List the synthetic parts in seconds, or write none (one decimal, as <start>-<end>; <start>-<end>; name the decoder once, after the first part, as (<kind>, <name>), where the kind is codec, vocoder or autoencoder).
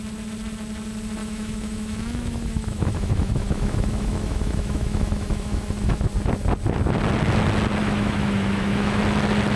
1.2-6.1 (autoencoder, DAC-VAE); 7.8-9.0